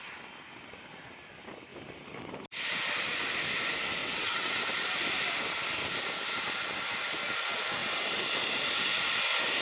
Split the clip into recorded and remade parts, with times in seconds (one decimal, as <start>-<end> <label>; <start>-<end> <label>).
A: 0.0-4.0 recorded; 4.0-4.6 remade; 4.6-9.6 recorded